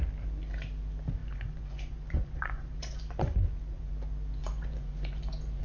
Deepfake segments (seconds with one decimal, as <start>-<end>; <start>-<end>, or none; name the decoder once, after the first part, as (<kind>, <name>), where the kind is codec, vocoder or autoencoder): 1.2-3.9 (vocoder, Vocos); 4.4-5.6